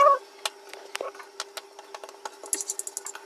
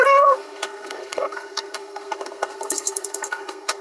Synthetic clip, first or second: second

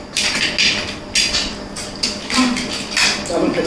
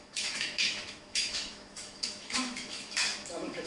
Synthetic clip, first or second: second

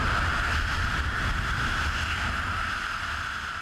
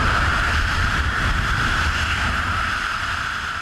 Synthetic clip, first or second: second